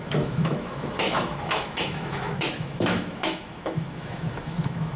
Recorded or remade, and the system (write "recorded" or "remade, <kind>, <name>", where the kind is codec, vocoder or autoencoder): remade, autoencoder, DAC-VAE